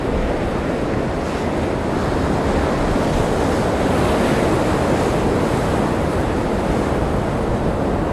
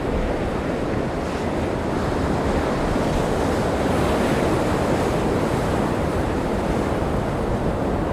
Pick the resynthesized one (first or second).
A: second